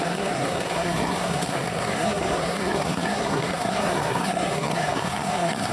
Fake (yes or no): yes